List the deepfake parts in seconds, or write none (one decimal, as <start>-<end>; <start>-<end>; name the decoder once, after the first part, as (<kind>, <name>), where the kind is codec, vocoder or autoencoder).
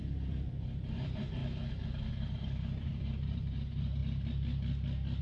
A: 0.0-1.4 (vocoder, BigVGAN v2); 2.1-4.0